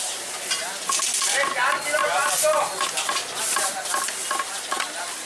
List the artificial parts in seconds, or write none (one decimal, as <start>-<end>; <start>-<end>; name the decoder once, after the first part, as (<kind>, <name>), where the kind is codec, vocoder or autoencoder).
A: none

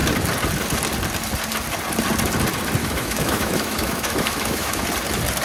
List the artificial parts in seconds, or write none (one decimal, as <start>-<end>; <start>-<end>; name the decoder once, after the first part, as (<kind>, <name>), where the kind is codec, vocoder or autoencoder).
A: 2.8-4.8 (autoencoder, DAC-VAE)